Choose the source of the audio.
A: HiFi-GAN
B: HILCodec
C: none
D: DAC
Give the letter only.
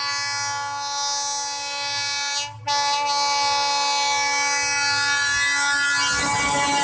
C